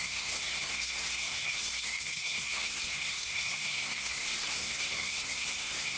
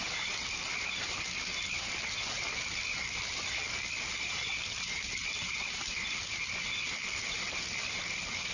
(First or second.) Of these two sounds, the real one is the second